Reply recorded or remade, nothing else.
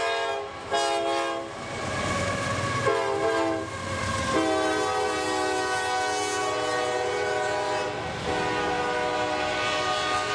recorded